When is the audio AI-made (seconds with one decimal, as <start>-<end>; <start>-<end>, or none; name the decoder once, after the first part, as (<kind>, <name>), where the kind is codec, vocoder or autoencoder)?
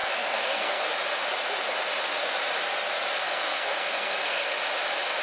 0.0-0.8 (codec, SNAC); 3.2-4.6